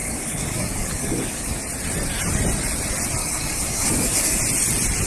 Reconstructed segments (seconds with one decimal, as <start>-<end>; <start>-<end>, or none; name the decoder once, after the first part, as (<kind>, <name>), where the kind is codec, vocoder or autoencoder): 0.0-1.6 (codec, DAC); 3.2-4.4